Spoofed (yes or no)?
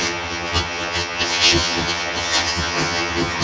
yes